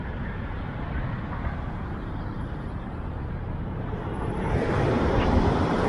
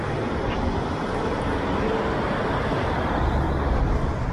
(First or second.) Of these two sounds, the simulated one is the first